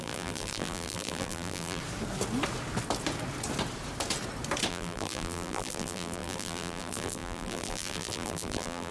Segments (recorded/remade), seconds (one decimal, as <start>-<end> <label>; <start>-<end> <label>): 0.0-1.8 remade; 1.8-4.7 recorded; 4.7-8.9 remade